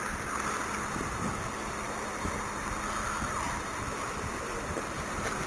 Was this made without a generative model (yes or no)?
yes